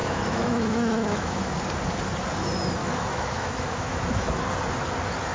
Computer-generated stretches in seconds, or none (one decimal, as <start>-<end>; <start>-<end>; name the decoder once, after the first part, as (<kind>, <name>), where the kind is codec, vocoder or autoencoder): 0.0-1.4 (autoencoder, DAC-VAE); 2.8-4.4